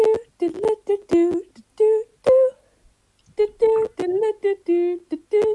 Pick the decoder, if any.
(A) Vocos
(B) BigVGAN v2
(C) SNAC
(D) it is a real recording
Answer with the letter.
D